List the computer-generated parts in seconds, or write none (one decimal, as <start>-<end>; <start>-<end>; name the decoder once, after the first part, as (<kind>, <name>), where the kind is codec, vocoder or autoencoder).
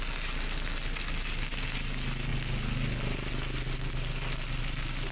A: none